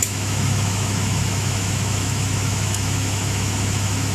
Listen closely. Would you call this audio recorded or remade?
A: remade